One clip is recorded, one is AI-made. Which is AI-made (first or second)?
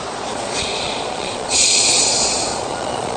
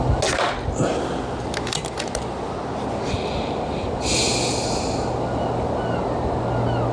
first